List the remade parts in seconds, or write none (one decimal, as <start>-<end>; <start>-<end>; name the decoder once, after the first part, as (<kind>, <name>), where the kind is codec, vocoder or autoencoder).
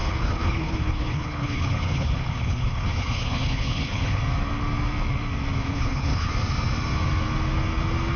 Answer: 0.0-4.2 (codec, HILCodec); 5.6-6.3